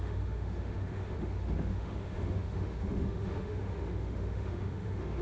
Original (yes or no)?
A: no